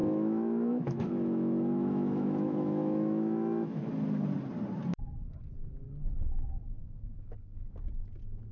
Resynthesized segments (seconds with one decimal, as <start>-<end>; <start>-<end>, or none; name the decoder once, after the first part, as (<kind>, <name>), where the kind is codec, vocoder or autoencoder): 0.0-3.9 (autoencoder, DAC-VAE)